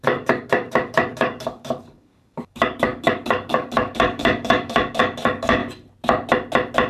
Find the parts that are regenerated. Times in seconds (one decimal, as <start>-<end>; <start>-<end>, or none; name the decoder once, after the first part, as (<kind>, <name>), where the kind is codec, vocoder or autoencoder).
0.0-5.6 (codec, DAC)